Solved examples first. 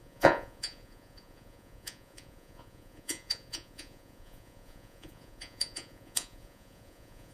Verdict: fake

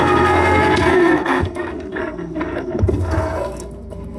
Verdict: fake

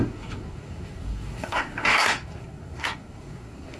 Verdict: fake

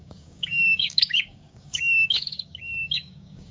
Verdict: fake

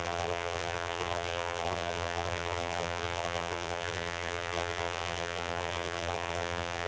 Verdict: fake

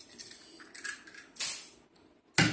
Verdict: real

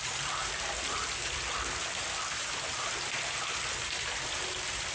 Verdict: real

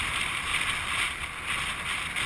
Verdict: fake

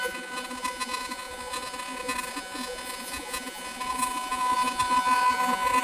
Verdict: fake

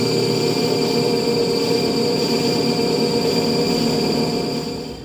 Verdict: fake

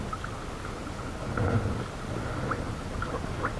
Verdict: real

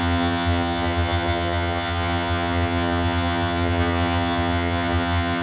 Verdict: fake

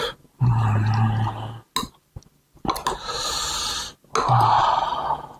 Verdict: real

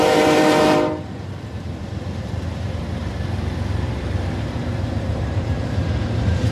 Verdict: fake